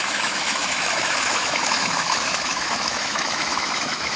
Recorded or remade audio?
remade